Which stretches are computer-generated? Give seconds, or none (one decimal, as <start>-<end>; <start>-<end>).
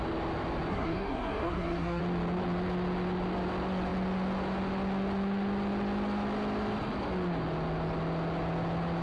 0.7-2.0